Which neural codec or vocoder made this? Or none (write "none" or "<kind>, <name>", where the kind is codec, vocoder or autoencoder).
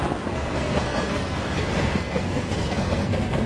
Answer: codec, SNAC